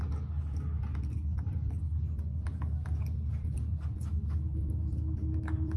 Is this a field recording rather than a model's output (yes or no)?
yes